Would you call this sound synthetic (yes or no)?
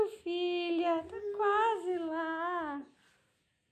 no